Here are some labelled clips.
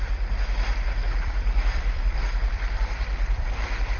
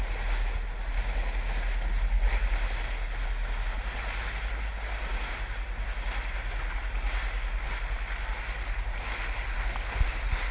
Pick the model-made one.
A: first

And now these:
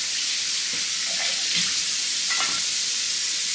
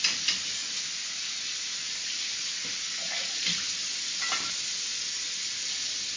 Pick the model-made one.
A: first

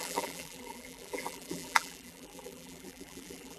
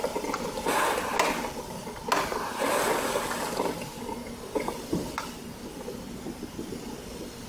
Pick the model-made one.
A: first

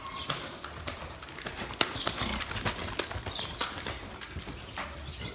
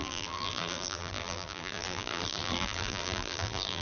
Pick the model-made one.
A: second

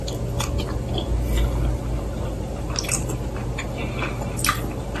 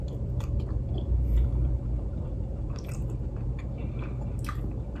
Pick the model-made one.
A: second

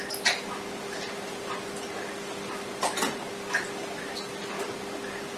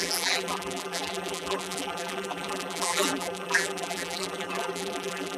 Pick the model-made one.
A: second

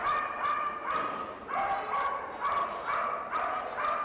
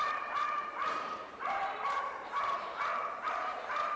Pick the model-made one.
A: second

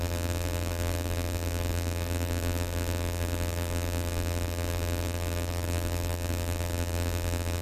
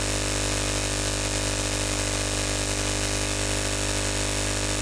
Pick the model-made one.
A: first